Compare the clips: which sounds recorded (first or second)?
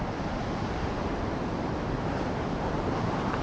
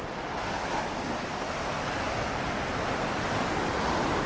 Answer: second